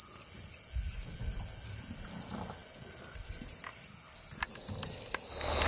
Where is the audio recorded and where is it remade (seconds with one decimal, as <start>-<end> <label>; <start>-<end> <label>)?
0.0-5.7 recorded